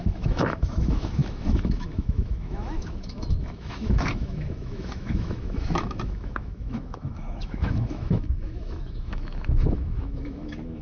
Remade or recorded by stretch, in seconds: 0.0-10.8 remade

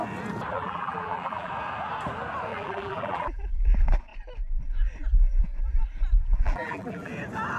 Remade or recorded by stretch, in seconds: 0.0-0.5 recorded; 0.5-1.5 remade; 1.5-2.5 recorded; 2.5-3.4 remade; 3.4-6.2 recorded; 6.2-7.1 remade; 7.1-7.6 recorded

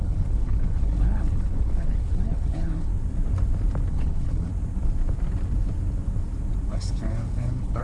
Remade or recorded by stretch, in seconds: 0.0-2.9 remade; 2.9-3.9 recorded; 3.9-4.5 remade; 4.5-6.7 recorded; 6.7-7.8 remade

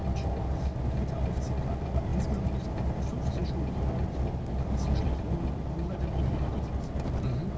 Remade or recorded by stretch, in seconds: 0.0-7.6 recorded

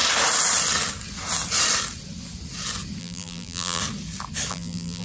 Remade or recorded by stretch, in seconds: 0.0-3.0 recorded; 3.0-3.8 remade; 3.8-4.5 recorded; 4.5-5.0 remade

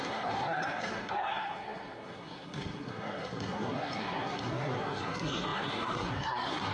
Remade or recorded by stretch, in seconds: 0.0-6.7 remade

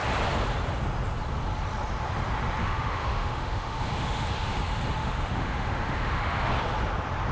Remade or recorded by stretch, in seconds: 0.0-2.6 recorded; 2.6-4.6 remade; 4.6-5.0 recorded; 5.0-6.5 remade; 6.5-7.3 recorded

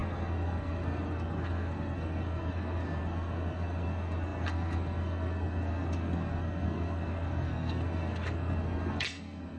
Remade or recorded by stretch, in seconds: 0.0-9.6 remade